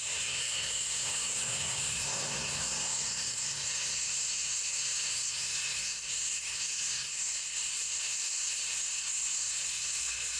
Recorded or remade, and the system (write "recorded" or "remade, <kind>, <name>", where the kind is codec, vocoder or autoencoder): remade, codec, SNAC